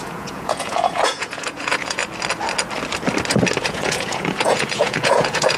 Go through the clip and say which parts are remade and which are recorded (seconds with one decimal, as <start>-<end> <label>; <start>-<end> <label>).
0.0-2.0 remade; 2.0-3.6 recorded; 3.6-5.6 remade